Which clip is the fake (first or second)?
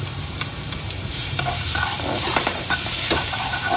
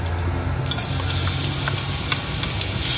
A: first